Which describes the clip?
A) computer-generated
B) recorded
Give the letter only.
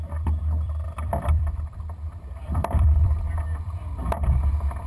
A